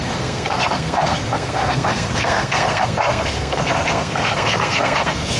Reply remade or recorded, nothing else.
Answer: remade